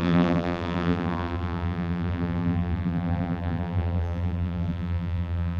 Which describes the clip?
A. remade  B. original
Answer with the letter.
A